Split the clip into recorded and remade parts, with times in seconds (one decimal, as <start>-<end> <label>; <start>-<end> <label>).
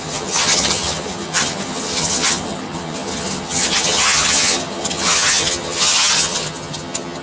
0.0-7.2 remade